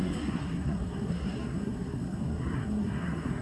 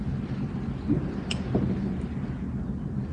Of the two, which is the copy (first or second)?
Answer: first